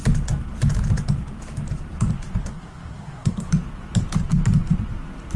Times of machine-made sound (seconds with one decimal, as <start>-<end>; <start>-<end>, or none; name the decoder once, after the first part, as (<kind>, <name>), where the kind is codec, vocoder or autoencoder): 2.4-3.5 (codec, SNAC)